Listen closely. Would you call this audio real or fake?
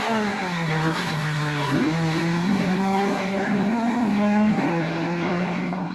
fake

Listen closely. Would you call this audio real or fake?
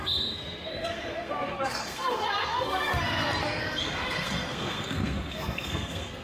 fake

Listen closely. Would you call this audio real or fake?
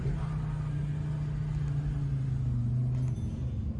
real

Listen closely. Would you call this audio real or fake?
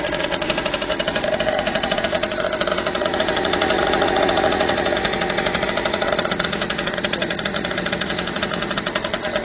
fake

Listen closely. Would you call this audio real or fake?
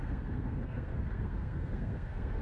fake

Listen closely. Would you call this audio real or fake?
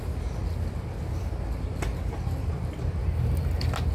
real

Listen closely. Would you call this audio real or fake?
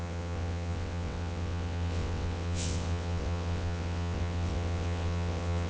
fake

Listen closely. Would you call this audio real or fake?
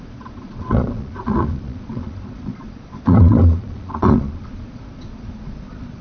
fake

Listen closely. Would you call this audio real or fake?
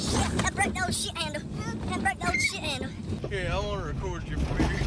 real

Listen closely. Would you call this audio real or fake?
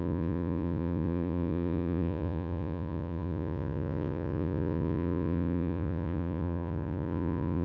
fake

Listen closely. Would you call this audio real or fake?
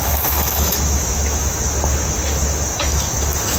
fake